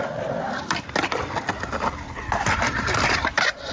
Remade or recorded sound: recorded